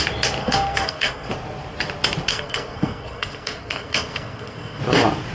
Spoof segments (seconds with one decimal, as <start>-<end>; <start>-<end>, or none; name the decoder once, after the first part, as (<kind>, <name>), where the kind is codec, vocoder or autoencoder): 0.4-1.3 (codec, SNAC); 2.3-4.8